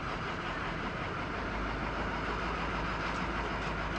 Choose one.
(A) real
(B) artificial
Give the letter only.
A